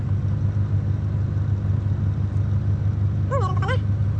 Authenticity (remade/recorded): recorded